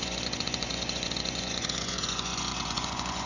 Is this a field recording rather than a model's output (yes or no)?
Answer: no